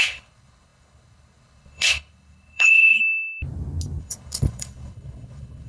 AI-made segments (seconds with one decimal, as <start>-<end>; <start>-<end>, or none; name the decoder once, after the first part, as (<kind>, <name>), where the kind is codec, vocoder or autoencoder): 0.0-3.0 (codec, HILCodec); 4.0-5.7